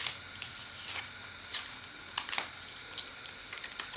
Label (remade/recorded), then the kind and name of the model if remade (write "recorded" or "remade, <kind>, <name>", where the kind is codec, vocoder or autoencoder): recorded